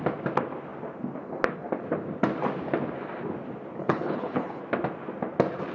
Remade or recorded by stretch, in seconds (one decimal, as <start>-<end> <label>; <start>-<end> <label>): 0.0-3.8 recorded; 3.8-4.6 remade; 4.6-5.7 recorded